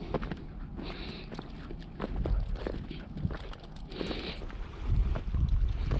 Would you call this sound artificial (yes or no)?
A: no